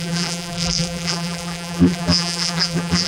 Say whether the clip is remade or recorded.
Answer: remade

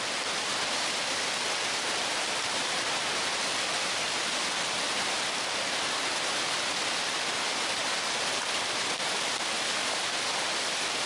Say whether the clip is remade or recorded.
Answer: remade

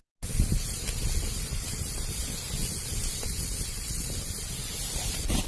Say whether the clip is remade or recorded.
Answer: recorded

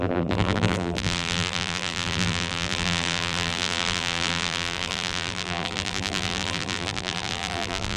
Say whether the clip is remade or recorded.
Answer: remade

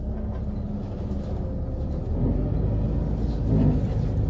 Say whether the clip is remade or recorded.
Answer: recorded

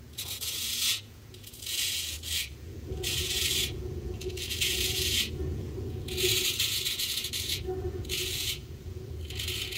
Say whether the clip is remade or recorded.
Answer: remade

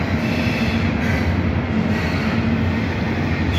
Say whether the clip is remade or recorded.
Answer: recorded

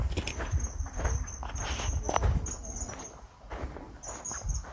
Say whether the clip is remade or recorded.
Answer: recorded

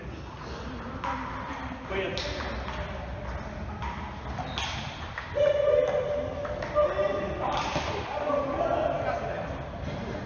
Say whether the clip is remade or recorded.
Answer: recorded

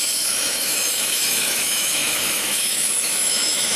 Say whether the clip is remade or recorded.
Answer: remade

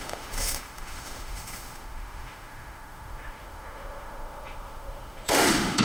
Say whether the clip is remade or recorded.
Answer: remade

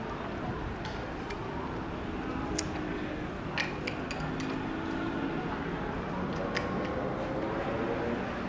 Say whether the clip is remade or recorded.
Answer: recorded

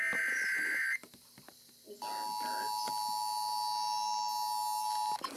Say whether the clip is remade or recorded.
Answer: recorded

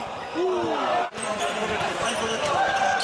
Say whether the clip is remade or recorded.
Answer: recorded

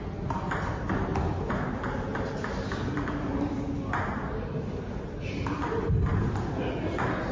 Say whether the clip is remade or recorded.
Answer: recorded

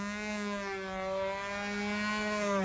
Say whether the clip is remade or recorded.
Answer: recorded